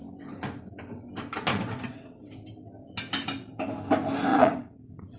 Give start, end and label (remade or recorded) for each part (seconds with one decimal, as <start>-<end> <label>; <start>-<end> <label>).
0.0-1.5 recorded; 1.5-2.3 remade; 2.3-4.3 recorded; 4.3-5.2 remade